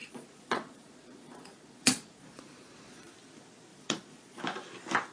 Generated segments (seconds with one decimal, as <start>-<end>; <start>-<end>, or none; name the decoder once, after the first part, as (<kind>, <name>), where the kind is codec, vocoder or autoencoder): 0.0-3.1 (vocoder, Vocos); 3.7-4.4